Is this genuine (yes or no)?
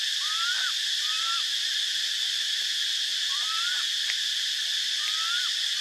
yes